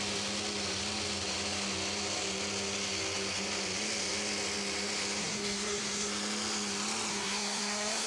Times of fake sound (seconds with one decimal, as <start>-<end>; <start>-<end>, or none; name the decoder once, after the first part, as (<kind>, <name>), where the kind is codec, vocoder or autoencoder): 5.2-6.1 (codec, SNAC); 7.1-8.1